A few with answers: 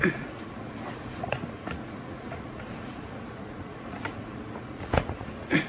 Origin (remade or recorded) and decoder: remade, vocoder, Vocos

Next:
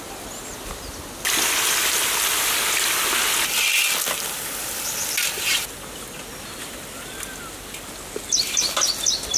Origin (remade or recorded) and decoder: recorded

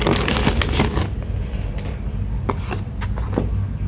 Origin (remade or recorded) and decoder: recorded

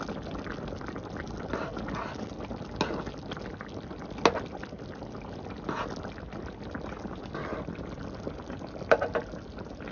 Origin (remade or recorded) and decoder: recorded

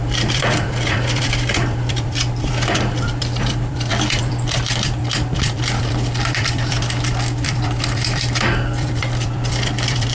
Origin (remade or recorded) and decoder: remade, vocoder, BigVGAN v2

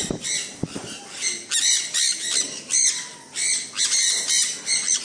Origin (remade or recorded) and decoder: recorded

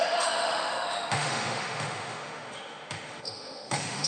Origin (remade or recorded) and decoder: remade, autoencoder, DAC-VAE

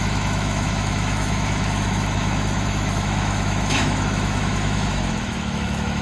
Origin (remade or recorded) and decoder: remade, autoencoder, DAC-VAE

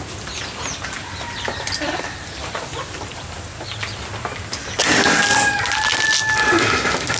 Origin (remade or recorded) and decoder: recorded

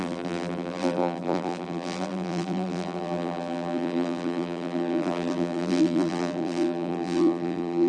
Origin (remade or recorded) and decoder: remade, vocoder, BigVGAN v2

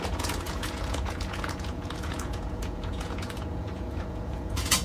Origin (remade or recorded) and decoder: remade, vocoder, Vocos